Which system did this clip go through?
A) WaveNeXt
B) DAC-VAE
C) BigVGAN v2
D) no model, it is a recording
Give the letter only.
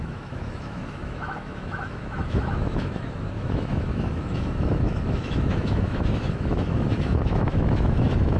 B